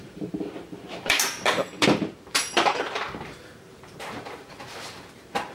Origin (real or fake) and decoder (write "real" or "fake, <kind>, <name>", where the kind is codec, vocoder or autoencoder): fake, vocoder, BigVGAN v2